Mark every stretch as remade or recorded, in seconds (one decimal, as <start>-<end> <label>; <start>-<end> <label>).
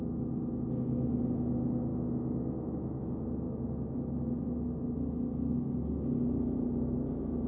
0.0-1.9 recorded; 1.9-3.0 remade; 3.0-7.5 recorded